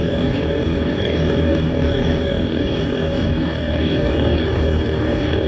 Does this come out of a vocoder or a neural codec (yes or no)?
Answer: yes